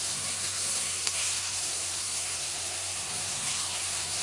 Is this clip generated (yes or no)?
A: yes